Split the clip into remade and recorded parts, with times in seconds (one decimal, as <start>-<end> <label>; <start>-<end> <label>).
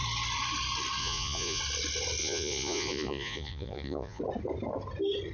0.0-1.0 recorded; 1.0-1.6 remade; 1.6-2.2 recorded; 2.2-4.2 remade; 4.2-5.3 recorded